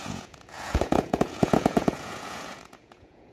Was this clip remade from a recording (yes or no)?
yes